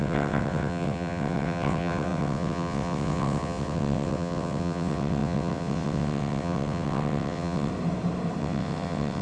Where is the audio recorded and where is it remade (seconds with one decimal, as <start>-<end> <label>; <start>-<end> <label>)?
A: 0.0-7.7 remade; 7.7-8.4 recorded; 8.4-9.2 remade